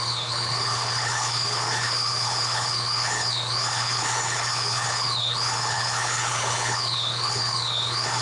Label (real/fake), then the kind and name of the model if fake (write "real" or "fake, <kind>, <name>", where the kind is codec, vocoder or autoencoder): fake, codec, HILCodec